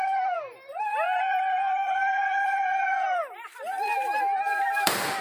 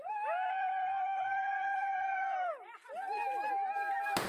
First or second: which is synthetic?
first